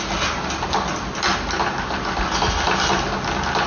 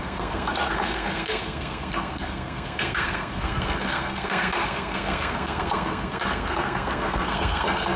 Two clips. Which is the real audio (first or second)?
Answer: first